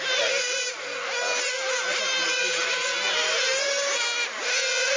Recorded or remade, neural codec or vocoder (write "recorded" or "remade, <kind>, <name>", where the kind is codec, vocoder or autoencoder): recorded